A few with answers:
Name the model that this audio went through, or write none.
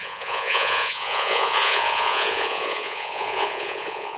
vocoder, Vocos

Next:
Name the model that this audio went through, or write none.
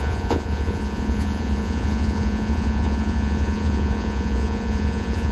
vocoder, Vocos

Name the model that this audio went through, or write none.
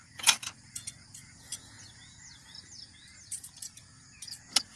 vocoder, Vocos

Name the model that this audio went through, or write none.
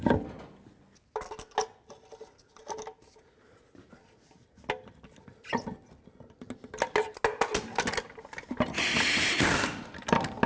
none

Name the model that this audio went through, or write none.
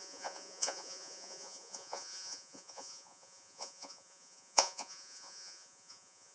vocoder, Vocos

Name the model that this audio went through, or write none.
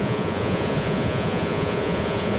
vocoder, Vocos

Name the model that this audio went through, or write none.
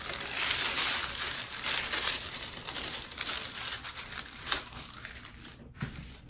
none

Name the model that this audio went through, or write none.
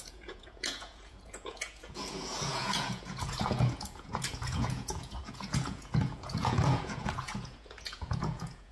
vocoder, Vocos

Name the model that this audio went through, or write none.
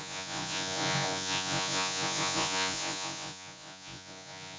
vocoder, Vocos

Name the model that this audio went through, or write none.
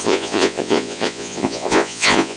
vocoder, Vocos